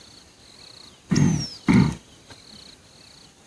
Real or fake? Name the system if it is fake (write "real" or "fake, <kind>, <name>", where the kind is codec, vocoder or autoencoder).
real